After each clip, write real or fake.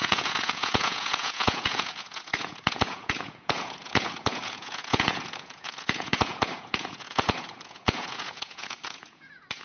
fake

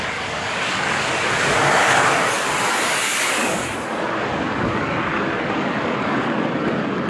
fake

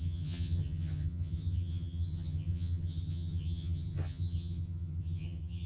fake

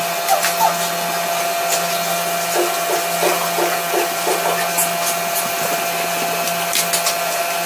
real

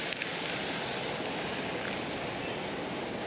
real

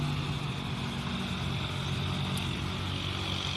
real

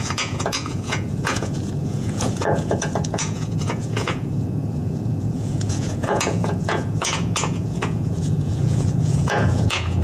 fake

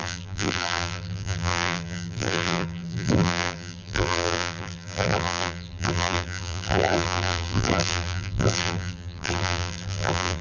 fake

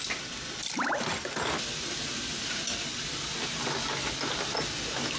real